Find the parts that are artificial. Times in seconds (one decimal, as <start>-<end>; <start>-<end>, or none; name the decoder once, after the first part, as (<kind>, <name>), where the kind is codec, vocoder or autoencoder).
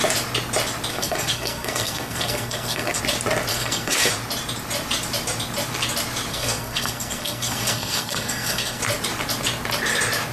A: 0.9-3.0 (codec, SNAC); 3.5-4.1; 6.3-8.8